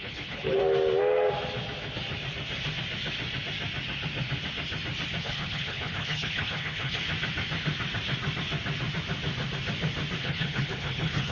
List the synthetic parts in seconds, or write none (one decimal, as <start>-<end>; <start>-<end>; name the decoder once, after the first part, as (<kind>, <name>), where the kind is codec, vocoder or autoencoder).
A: 0.0-0.6 (codec, HILCodec); 5.2-7.0; 10.2-11.3